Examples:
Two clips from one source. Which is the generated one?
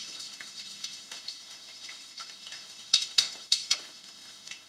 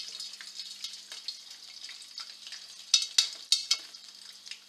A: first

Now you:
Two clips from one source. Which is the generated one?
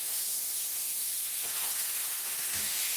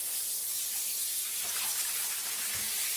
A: first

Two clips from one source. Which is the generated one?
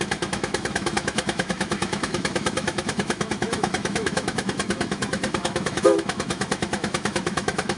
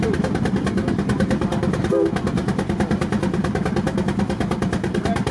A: first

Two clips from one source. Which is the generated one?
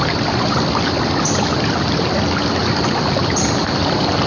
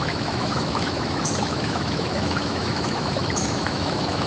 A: second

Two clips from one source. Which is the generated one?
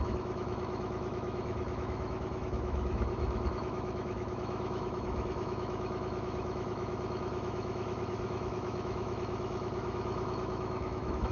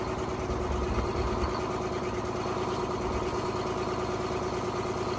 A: first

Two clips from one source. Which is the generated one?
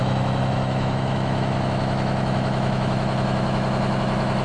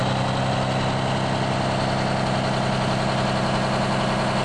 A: first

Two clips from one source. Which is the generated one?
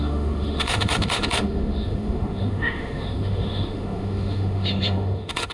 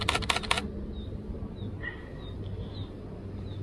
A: first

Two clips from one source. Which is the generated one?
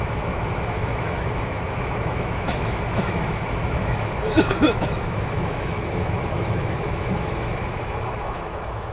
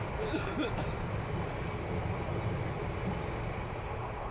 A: first